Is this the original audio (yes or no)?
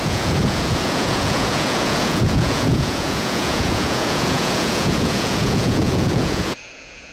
no